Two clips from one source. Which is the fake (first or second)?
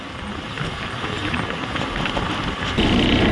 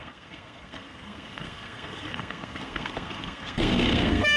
second